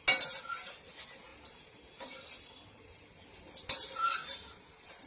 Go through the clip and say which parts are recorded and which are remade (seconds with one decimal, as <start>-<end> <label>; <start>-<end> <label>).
0.0-5.1 recorded